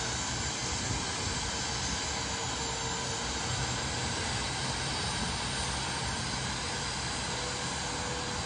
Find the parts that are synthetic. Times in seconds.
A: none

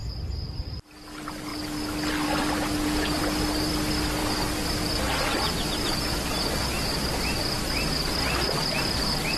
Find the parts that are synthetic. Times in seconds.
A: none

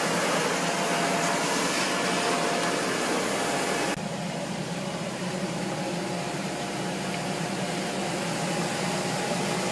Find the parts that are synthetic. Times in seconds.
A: 4.1-7.1 (vocoder, BigVGAN v2)

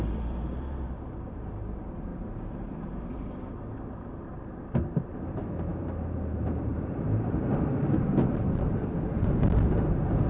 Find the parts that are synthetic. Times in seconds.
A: 0.0-10.3 (vocoder, BigVGAN v2)

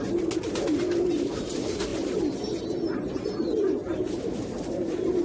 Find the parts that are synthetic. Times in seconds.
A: none

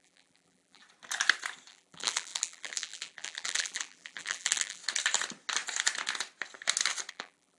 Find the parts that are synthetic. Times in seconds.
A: 0.0-0.8 (vocoder, BigVGAN v2); 1.7-4.8; 7.1-7.6